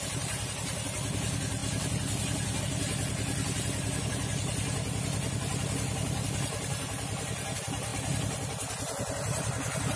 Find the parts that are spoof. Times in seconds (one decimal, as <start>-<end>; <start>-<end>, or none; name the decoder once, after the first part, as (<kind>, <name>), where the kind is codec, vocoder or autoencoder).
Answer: none